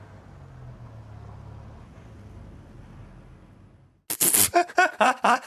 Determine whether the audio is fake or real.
real